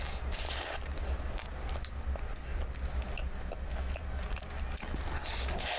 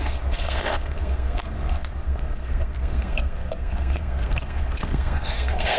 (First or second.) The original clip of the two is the first